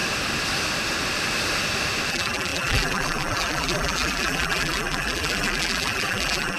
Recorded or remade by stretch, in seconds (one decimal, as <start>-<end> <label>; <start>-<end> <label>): 0.0-2.1 recorded; 2.1-6.6 remade